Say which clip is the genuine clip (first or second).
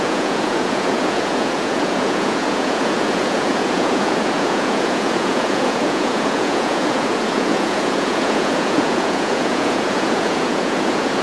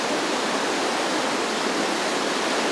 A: second